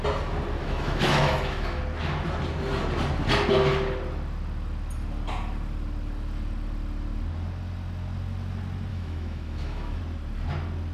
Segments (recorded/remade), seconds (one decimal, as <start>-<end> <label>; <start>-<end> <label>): 0.0-0.6 recorded; 0.6-1.8 remade; 1.8-8.9 recorded; 8.9-10.0 remade; 10.0-10.9 recorded